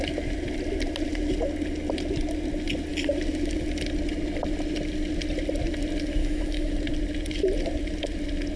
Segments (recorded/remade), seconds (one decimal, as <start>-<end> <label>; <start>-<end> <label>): 0.0-6.2 recorded; 6.2-6.7 remade; 6.7-8.6 recorded